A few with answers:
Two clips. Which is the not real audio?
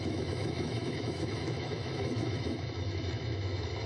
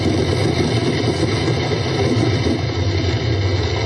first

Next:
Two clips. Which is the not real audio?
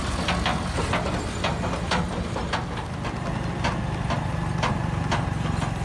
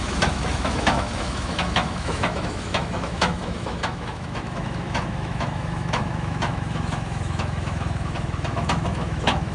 second